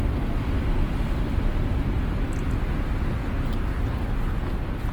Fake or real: real